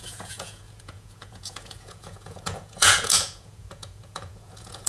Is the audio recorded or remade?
remade